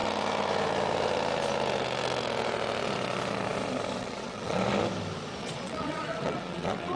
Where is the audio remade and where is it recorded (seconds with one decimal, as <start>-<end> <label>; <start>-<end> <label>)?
0.0-4.0 recorded; 4.0-4.6 remade; 4.6-5.4 recorded; 5.4-7.0 remade